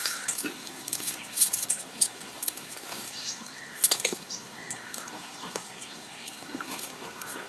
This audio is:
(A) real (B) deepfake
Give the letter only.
B